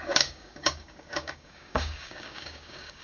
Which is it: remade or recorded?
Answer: remade